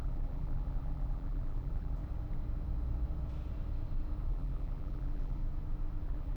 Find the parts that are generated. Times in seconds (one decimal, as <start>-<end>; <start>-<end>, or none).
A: 0.0-2.0; 4.3-5.4; 6.0-6.4